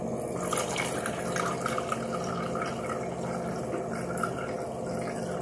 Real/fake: real